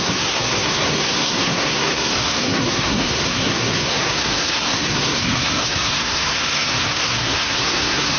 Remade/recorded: remade